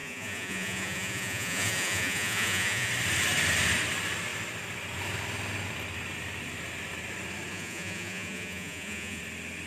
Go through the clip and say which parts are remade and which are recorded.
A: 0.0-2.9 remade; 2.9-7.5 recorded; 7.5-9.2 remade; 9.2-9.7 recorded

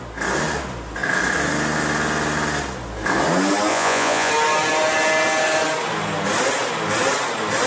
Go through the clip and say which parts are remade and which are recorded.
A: 0.0-3.7 recorded; 3.7-4.3 remade; 4.3-7.7 recorded

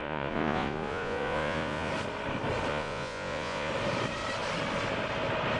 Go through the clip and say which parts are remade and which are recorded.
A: 0.0-1.9 remade; 1.9-2.7 recorded; 2.7-3.7 remade; 3.7-5.6 recorded

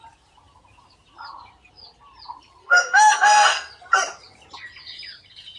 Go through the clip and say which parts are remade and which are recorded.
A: 0.0-2.6 recorded; 2.6-3.7 remade; 3.7-5.6 recorded

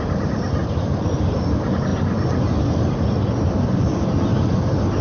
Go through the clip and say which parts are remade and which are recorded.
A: 0.0-0.6 remade; 0.6-1.3 recorded; 1.3-1.9 remade; 1.9-3.3 recorded; 3.3-4.3 remade; 4.3-5.0 recorded

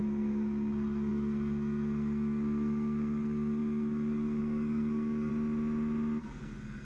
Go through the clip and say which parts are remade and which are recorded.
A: 0.0-5.3 remade; 5.3-6.2 recorded; 6.2-6.8 remade

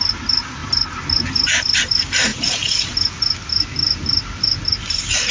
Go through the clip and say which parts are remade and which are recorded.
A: 0.0-2.3 recorded; 2.3-2.9 remade; 2.9-5.3 recorded

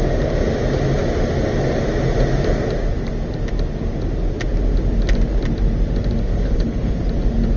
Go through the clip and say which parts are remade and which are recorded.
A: 0.0-6.3 recorded; 6.3-6.9 remade; 6.9-7.6 recorded